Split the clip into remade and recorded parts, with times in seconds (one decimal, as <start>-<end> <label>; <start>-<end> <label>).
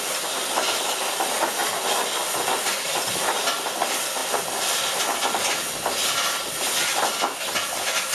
0.0-8.1 recorded